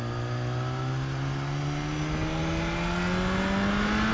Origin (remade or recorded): recorded